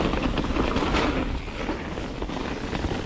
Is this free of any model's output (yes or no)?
yes